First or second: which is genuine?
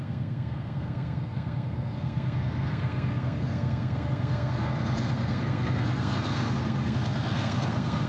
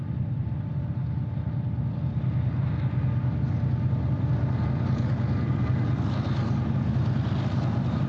second